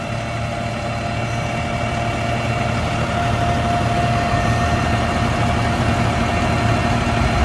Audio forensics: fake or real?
real